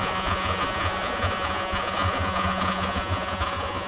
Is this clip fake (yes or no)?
yes